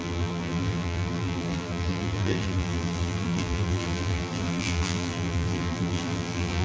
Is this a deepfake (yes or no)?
yes